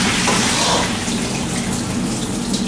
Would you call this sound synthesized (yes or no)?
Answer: no